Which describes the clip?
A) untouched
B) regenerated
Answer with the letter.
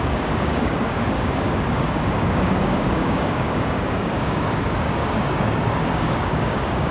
B